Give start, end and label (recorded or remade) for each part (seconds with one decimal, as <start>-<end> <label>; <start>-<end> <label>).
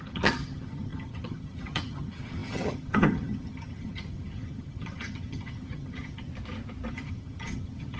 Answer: 0.0-6.3 remade; 6.3-6.9 recorded; 6.9-8.0 remade